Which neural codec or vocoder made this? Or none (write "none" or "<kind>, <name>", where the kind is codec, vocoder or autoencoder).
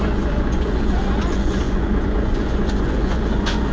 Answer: vocoder, Vocos